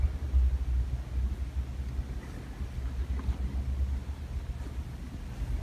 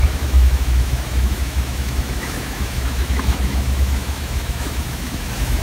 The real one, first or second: first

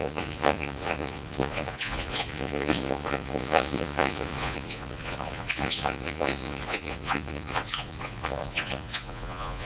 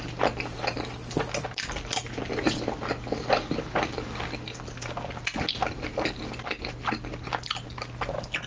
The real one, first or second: second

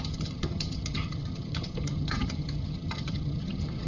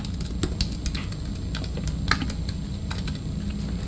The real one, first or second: second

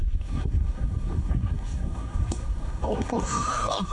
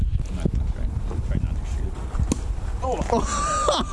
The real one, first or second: second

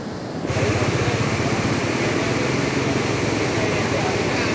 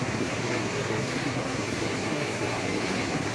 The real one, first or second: first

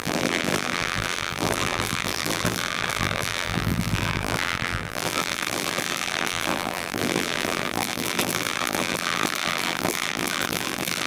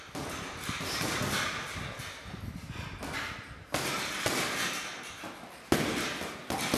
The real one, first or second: second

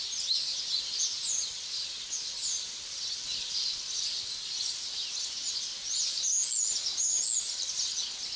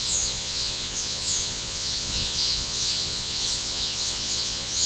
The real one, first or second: first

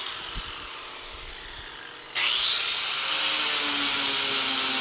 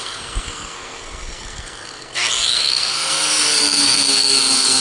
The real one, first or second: first